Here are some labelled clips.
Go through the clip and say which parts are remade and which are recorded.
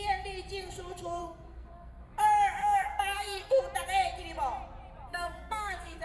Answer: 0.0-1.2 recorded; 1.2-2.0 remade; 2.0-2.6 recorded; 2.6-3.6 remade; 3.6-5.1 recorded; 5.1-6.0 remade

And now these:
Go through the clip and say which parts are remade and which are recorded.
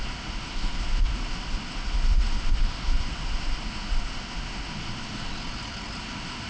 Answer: 0.0-5.3 remade; 5.3-6.0 recorded; 6.0-6.5 remade